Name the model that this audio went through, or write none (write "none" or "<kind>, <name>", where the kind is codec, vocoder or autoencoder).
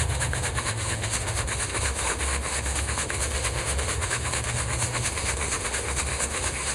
autoencoder, DAC-VAE